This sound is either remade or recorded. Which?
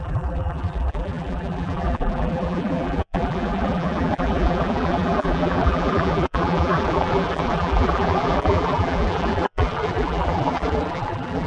remade